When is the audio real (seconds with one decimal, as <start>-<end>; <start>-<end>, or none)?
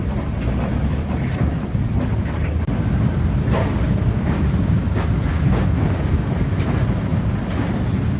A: 0.0-3.6; 4.4-5.3; 6.3-8.2